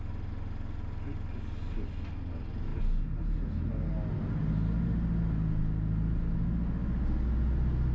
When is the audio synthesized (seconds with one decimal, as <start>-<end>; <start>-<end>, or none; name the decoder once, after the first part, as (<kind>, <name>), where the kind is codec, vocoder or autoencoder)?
none